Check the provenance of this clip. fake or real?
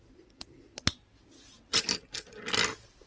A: real